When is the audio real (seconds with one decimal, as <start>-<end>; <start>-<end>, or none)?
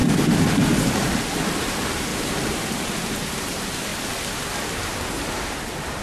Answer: 0.0-1.4; 3.9-6.0